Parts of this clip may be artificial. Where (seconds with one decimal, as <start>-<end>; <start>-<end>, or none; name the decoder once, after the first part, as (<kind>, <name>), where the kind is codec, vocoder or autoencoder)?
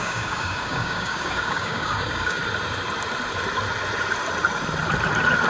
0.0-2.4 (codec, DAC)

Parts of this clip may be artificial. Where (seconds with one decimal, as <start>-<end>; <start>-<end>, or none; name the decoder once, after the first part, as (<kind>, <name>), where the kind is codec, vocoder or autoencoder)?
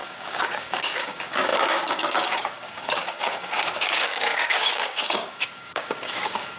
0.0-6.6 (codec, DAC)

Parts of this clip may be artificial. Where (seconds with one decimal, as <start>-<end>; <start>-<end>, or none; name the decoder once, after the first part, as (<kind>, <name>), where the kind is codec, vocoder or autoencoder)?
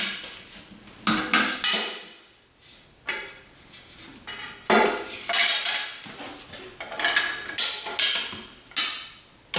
none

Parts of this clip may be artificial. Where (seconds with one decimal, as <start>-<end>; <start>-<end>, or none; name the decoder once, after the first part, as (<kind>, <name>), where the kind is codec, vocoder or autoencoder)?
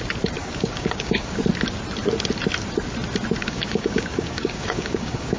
0.4-1.4 (codec, DAC); 3.4-5.4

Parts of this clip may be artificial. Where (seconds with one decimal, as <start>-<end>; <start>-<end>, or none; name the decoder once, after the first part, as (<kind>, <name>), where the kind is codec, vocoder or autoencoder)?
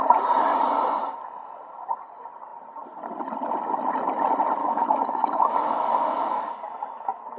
4.6-6.7 (codec, DAC)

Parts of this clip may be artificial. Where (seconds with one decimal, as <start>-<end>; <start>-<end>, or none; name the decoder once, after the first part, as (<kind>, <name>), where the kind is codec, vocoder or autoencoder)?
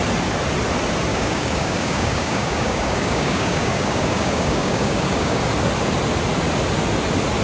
1.1-5.4 (codec, DAC)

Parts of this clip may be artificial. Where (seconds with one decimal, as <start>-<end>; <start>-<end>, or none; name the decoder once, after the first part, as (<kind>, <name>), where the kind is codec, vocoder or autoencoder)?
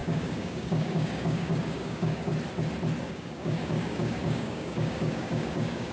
0.0-2.3 (codec, DAC); 3.0-5.9